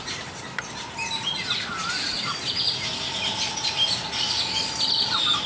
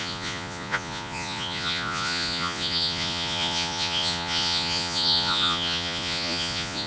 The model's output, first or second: second